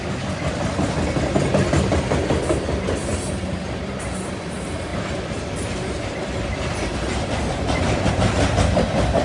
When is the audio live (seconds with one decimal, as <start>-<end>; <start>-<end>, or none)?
0.0-9.2